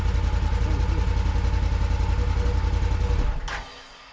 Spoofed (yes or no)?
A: no